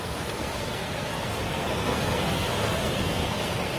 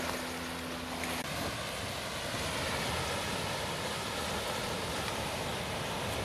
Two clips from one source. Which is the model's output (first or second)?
first